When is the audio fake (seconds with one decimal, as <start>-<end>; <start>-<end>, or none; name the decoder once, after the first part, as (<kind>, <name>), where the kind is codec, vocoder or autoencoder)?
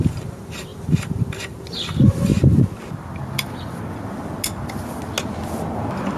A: 0.0-2.3 (vocoder, BigVGAN v2)